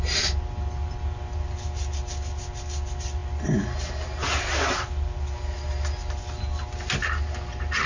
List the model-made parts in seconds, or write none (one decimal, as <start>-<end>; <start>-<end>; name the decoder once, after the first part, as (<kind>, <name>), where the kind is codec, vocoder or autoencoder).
none